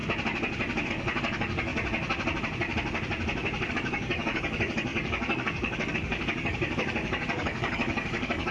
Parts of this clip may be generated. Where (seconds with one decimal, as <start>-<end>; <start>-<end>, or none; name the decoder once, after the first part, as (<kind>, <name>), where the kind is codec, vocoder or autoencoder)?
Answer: 0.9-1.7 (codec, DAC); 3.7-8.5